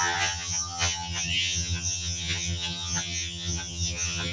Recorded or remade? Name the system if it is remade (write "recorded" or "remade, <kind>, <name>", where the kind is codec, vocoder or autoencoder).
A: remade, vocoder, HiFi-GAN